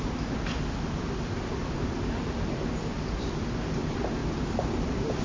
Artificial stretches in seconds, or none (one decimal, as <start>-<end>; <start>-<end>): 4.2-5.2